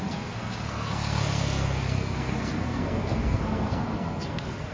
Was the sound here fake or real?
fake